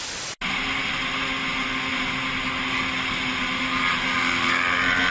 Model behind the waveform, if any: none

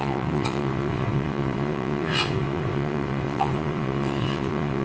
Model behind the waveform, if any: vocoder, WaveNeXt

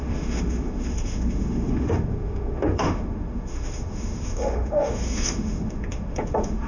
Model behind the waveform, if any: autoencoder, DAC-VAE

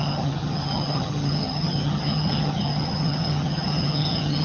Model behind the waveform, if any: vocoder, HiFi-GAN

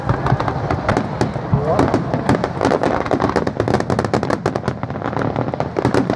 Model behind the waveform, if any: none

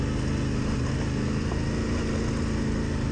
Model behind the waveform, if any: none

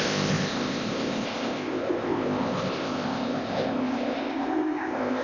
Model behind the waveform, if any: codec, ZipCodec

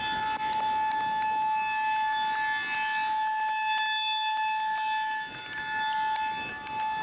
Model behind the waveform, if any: none